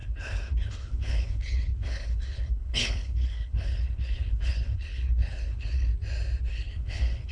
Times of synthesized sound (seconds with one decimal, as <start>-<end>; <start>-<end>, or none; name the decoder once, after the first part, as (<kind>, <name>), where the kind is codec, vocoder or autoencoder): 0.0-5.9 (codec, HILCodec); 6.5-7.3